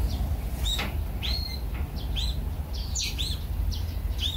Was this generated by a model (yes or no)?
no